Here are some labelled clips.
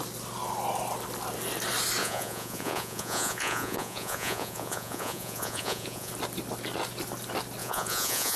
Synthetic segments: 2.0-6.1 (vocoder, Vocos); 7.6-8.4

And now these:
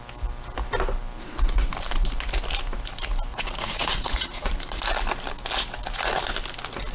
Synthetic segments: 3.3-4.8 (vocoder, Vocos)

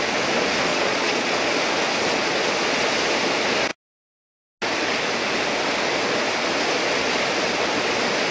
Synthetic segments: 0.7-1.4 (vocoder, Vocos)

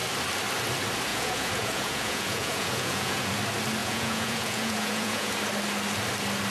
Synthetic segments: 1.1-3.3 (vocoder, Vocos); 3.8-5.3

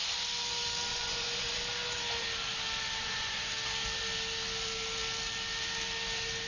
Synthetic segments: 0.9-1.6 (vocoder, Vocos); 3.0-3.5

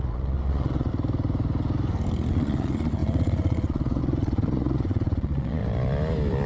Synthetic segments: 0.0-0.9 (vocoder, Vocos); 2.3-5.6

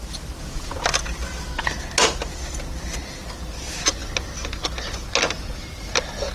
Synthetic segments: none